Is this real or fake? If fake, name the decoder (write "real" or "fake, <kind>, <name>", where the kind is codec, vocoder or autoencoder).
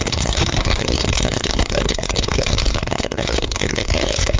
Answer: fake, codec, SNAC